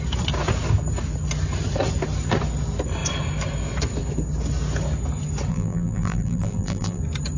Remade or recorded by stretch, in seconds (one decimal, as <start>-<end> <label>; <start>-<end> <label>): 0.0-5.5 recorded; 5.5-7.0 remade; 7.0-7.4 recorded

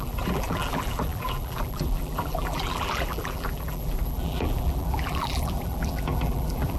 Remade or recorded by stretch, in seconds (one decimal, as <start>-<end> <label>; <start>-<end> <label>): 0.0-6.8 remade

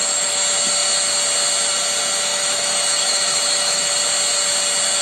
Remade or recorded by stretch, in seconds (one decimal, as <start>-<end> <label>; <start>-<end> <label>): 0.0-2.3 recorded; 2.3-3.9 remade; 3.9-5.0 recorded

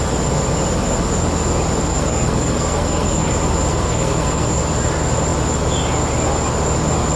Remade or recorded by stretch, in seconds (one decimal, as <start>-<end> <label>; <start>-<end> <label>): 0.0-1.9 recorded; 1.9-3.3 remade; 3.3-3.7 recorded; 3.7-4.6 remade; 4.6-7.2 recorded

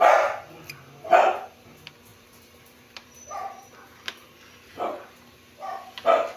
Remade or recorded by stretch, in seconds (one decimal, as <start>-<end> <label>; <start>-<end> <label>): 0.0-2.1 recorded; 2.1-5.4 remade; 5.4-6.4 recorded